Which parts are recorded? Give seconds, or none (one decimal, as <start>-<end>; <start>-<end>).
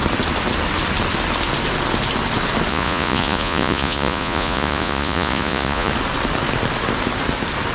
0.0-2.7; 5.9-7.7